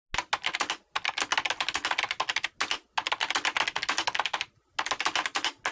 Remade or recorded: recorded